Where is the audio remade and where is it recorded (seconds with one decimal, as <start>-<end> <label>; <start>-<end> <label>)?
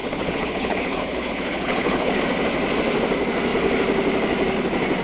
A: 0.0-2.2 remade; 2.2-5.0 recorded